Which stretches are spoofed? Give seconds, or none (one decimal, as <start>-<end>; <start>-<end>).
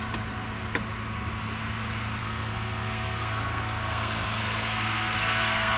2.2-5.8